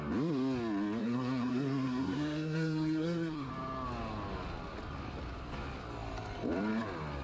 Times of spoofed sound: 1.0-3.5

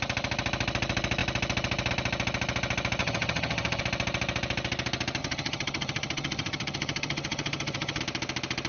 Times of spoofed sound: 3.0-3.8; 5.2-8.0

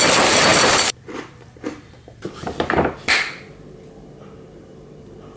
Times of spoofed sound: 0.5-2.7

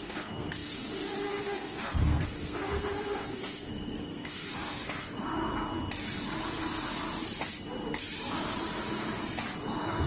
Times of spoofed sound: 0.0-5.5

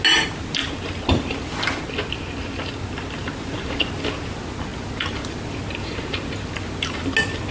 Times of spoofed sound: none

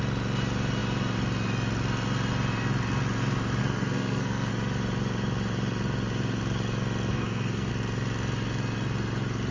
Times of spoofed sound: 3.6-4.5; 7.1-7.7

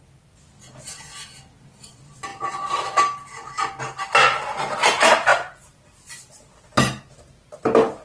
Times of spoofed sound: none

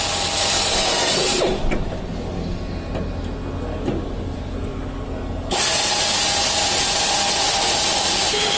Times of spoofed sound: none